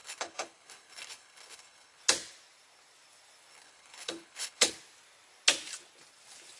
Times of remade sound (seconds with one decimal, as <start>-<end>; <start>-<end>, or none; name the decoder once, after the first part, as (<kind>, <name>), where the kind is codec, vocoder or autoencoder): 0.0-2.0 (codec, HILCodec); 3.5-4.7